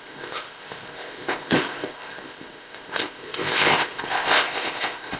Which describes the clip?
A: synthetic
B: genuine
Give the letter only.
A